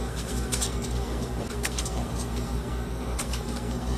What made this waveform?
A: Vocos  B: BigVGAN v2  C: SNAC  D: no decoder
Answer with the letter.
C